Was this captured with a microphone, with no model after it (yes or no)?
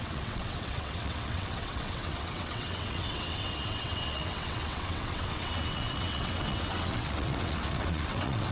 no